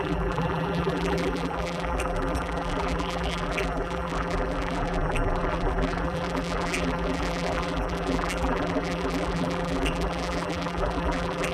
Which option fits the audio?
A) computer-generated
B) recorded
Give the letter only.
A